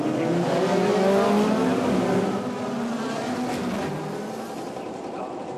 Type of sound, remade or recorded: recorded